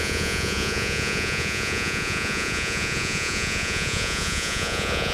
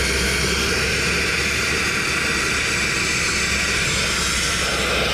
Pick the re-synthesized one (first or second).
first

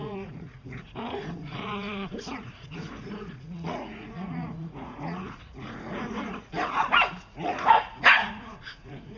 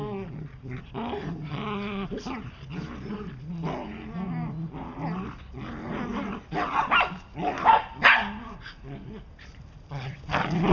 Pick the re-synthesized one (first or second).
first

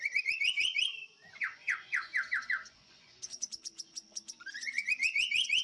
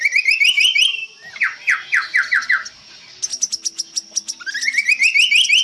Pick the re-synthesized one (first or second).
first